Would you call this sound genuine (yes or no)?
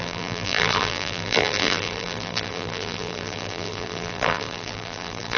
no